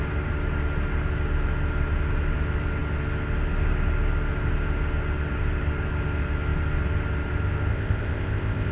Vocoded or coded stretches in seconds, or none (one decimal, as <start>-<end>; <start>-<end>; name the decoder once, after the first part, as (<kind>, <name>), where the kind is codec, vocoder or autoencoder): 7.7-8.7 (codec, ZipCodec)